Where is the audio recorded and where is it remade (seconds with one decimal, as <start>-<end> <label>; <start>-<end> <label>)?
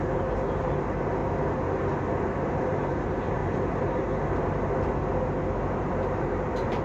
0.0-1.2 remade; 1.2-2.6 recorded; 2.6-3.4 remade; 3.4-5.7 recorded; 5.7-6.8 remade